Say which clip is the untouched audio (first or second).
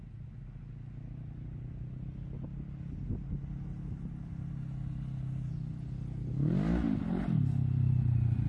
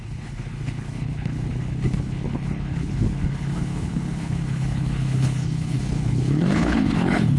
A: first